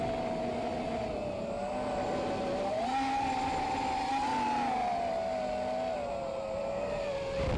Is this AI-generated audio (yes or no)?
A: no